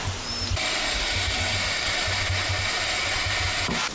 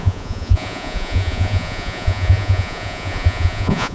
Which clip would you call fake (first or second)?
second